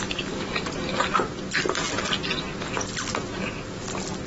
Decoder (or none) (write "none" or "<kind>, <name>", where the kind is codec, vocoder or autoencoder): none